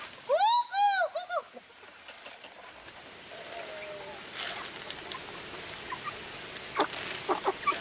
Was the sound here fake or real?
real